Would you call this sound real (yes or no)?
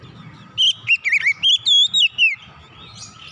yes